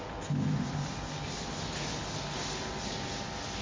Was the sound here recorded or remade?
recorded